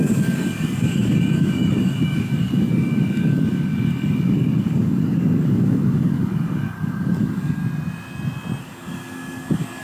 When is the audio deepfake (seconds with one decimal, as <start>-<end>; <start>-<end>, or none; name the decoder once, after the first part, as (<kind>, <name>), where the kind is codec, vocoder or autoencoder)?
0.0-7.6 (codec, DAC); 8.6-9.8